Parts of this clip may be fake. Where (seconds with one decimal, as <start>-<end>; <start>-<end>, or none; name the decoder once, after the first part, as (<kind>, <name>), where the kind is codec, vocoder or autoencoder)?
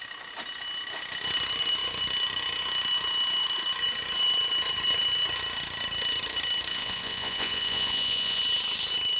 6.7-8.4 (vocoder, Vocos)